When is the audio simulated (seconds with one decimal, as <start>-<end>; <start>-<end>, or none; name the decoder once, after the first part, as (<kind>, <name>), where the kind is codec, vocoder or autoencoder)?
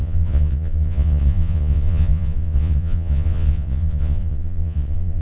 0.0-5.2 (vocoder, Vocos)